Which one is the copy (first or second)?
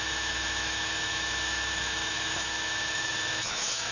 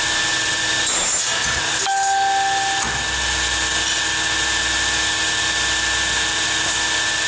first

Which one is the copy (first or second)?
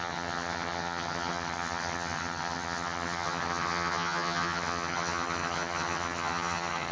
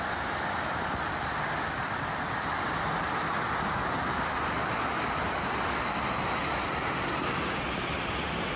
first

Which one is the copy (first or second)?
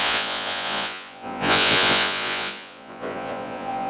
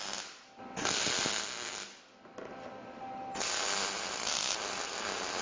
first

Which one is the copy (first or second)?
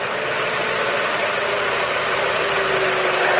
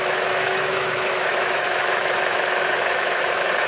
second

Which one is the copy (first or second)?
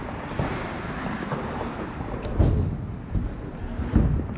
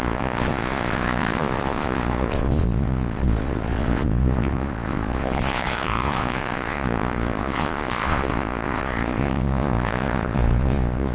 second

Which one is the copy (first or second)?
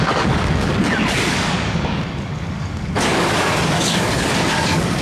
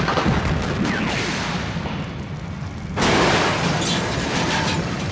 first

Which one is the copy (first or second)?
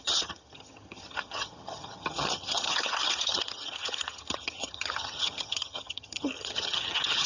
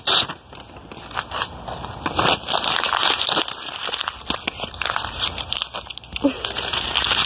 first